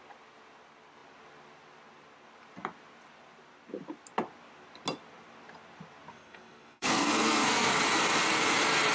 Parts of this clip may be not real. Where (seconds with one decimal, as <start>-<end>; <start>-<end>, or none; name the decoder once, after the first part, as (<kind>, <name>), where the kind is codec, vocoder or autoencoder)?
6.1-7.8 (codec, SNAC)